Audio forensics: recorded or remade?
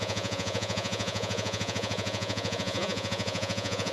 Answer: remade